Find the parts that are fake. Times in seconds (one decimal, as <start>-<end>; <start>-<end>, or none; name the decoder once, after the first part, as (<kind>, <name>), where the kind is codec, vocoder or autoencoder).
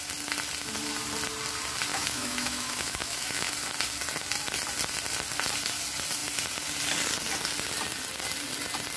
1.9-3.5 (autoencoder, DAC-VAE)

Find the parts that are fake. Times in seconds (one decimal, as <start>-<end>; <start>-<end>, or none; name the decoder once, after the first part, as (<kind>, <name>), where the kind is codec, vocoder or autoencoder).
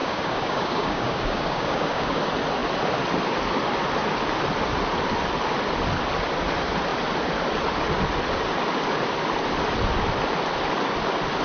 0.0-2.2 (codec, DAC)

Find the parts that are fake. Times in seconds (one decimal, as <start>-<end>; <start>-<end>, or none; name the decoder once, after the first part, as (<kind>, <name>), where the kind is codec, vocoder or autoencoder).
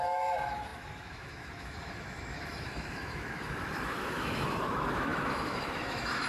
0.0-6.3 (autoencoder, DAC-VAE)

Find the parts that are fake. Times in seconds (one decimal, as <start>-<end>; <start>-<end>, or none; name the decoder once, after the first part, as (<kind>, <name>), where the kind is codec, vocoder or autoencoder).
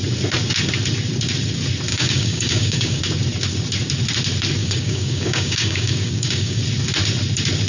1.9-3.0 (codec, DAC); 4.6-6.6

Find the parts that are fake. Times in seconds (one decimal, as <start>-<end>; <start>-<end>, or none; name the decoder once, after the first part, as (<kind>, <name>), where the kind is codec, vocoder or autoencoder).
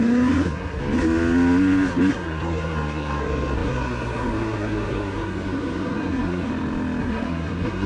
0.0-0.8 (codec, SNAC); 2.1-6.5; 7.0-7.9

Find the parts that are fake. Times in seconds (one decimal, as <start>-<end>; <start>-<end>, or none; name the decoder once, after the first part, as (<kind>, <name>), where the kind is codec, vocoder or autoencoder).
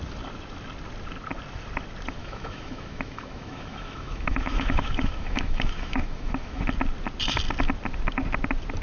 2.2-6.6 (autoencoder, DAC-VAE)